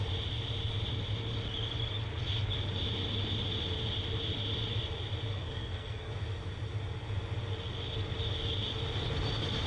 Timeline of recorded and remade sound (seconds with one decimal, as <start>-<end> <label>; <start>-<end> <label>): 0.0-5.3 recorded; 5.3-6.1 remade; 6.1-9.7 recorded